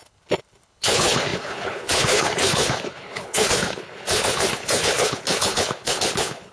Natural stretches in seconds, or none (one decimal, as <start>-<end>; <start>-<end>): none